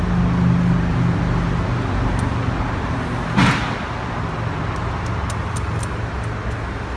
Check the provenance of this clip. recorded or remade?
recorded